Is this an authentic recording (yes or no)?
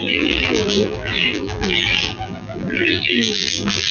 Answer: no